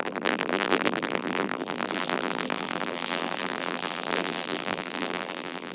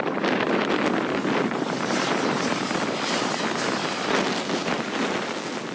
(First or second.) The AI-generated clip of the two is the first